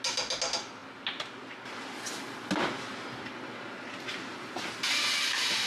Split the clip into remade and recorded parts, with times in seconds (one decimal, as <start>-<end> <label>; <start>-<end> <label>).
0.0-5.7 recorded